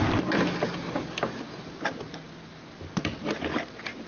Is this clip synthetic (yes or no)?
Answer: no